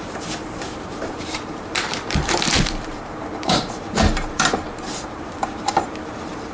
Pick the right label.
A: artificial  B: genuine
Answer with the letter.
A